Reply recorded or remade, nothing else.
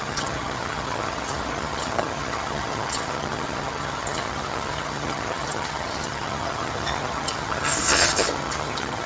remade